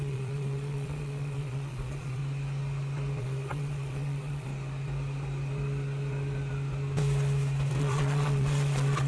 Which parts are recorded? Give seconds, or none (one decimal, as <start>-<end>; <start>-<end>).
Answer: 2.2-3.2; 4.5-7.8